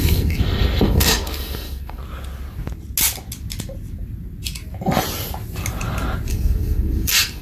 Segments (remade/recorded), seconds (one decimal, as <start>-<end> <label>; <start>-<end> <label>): 0.0-2.0 remade; 2.0-6.3 recorded; 6.3-7.4 remade